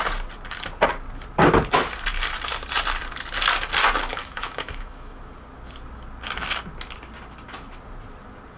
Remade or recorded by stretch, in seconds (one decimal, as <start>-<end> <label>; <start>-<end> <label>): 0.0-4.2 recorded; 4.2-5.2 remade; 5.2-8.6 recorded